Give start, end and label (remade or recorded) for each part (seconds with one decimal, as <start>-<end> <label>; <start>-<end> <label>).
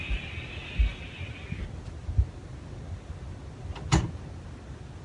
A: 0.0-5.0 recorded